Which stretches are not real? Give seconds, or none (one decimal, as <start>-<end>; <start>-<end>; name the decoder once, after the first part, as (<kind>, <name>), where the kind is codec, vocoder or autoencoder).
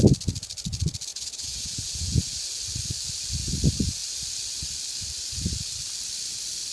1.1-2.2 (vocoder, Vocos)